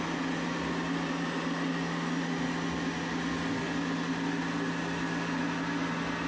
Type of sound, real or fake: real